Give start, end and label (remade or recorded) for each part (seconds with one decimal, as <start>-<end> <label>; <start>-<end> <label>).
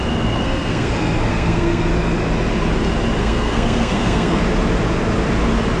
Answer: 0.0-0.4 recorded; 0.4-0.9 remade; 0.9-1.3 recorded; 1.3-1.9 remade; 1.9-3.2 recorded; 3.2-4.4 remade; 4.4-5.8 recorded